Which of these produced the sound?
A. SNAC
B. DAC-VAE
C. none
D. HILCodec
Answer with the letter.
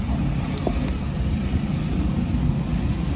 C